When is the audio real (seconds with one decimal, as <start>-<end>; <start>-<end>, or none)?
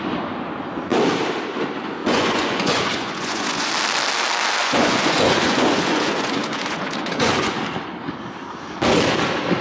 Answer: 0.0-2.0; 3.7-4.6; 7.6-9.6